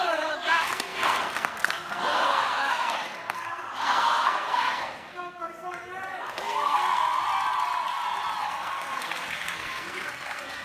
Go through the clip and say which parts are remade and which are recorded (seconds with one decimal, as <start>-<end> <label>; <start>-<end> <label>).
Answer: 0.0-7.0 remade; 7.0-8.4 recorded; 8.4-10.6 remade